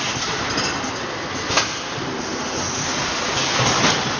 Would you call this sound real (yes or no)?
yes